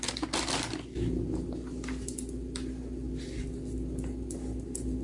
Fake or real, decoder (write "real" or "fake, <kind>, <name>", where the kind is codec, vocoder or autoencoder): real